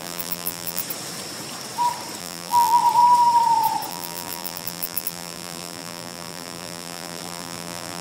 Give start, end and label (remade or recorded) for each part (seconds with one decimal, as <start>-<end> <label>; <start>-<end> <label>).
0.0-0.8 remade; 0.8-2.2 recorded; 2.2-2.8 remade; 2.8-3.9 recorded; 3.9-8.0 remade